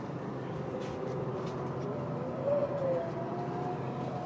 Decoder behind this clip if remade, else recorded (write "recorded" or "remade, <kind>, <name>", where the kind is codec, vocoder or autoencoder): recorded